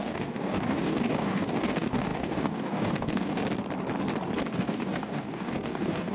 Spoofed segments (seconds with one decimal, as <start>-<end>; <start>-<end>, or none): 0.0-3.4; 4.5-6.1